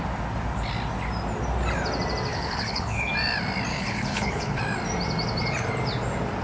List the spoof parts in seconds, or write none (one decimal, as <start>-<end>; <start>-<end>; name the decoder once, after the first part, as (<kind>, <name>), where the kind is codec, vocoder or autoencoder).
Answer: 2.3-3.1 (codec, HILCodec); 3.7-4.6